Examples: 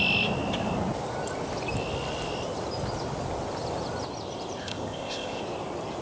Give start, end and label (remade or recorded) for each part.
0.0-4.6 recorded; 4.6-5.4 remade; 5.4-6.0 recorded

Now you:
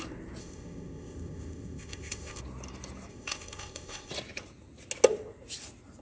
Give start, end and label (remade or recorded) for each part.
0.0-0.4 recorded; 0.4-2.4 remade; 2.4-3.1 recorded; 3.1-4.1 remade; 4.1-6.0 recorded

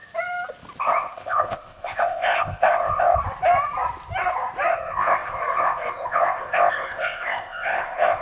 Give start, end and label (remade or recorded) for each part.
0.0-0.8 recorded; 0.8-3.2 remade; 3.2-4.7 recorded; 4.7-8.2 remade

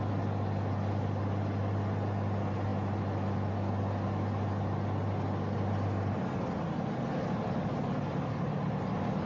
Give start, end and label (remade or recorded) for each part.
0.0-9.3 recorded

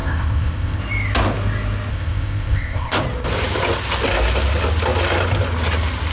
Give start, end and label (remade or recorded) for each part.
0.0-0.8 remade; 0.8-1.9 recorded; 1.9-3.0 remade; 3.0-6.1 recorded

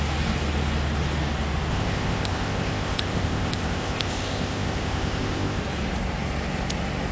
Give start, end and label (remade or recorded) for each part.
0.0-1.7 recorded; 1.7-5.6 remade; 5.6-7.1 recorded

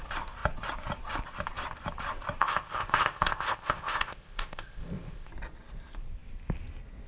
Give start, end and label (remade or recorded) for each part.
0.0-2.4 recorded; 2.4-5.3 remade; 5.3-7.1 recorded